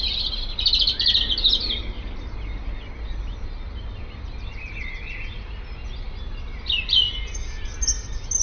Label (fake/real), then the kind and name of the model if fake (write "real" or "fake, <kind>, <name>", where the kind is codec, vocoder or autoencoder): real